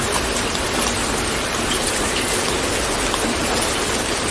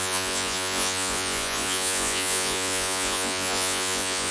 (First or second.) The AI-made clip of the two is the second